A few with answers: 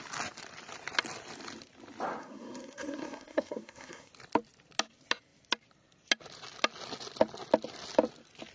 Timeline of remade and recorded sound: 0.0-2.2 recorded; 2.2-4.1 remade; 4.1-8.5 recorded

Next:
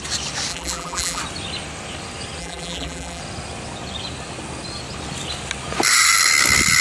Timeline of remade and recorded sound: 0.0-0.5 recorded; 0.5-1.2 remade; 1.2-2.4 recorded; 2.4-3.2 remade; 3.2-6.8 recorded

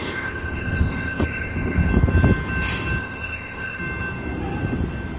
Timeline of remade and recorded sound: 0.0-1.9 remade; 1.9-3.0 recorded; 3.0-3.8 remade; 3.8-5.2 recorded

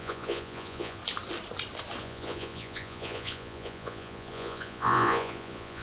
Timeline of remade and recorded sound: 0.0-1.0 remade; 1.0-2.0 recorded; 2.0-5.8 remade

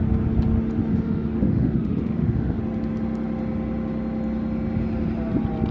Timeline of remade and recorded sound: 0.0-0.9 recorded; 0.9-2.6 remade; 2.6-5.7 recorded

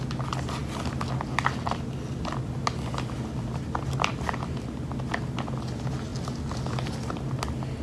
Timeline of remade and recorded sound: 0.0-7.8 recorded

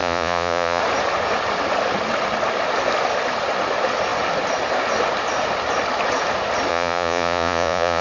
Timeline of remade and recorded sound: 0.0-0.8 remade; 0.8-6.7 recorded; 6.7-8.0 remade

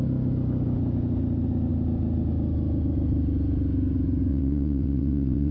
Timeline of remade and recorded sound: 0.0-4.3 recorded; 4.3-5.5 remade